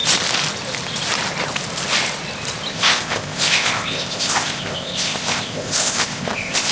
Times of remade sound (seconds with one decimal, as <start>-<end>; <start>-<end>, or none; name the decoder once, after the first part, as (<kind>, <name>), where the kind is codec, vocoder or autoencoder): 2.7-6.7 (codec, ZipCodec)